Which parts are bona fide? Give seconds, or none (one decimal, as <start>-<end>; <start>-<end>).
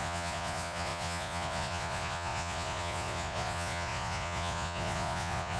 none